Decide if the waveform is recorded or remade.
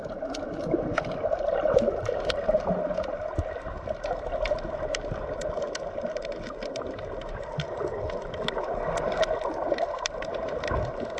recorded